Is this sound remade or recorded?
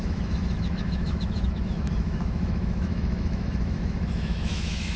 remade